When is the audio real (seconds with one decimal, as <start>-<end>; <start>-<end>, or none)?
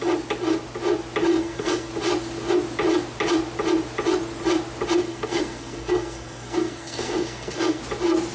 0.0-1.3; 1.9-5.0; 7.8-8.3